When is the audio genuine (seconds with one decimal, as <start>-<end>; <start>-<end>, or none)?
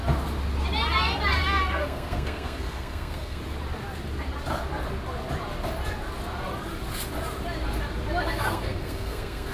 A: 0.0-1.4; 3.4-8.2